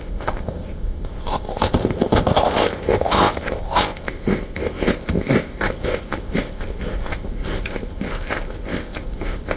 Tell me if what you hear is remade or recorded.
remade